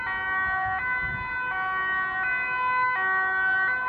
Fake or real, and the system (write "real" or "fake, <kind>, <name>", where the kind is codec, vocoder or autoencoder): real